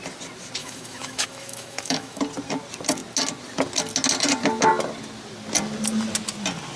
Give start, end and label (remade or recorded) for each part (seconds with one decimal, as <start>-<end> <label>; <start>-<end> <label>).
0.0-0.6 recorded; 0.6-2.2 remade; 2.2-6.8 recorded